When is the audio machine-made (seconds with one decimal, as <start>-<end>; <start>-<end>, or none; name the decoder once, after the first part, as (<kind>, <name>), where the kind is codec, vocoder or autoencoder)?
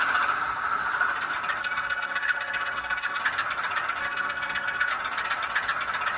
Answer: 1.6-3.2 (codec, SNAC); 4.0-4.9